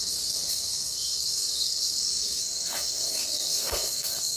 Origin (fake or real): fake